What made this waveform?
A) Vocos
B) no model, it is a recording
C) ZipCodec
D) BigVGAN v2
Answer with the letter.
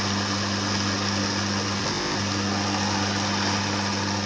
B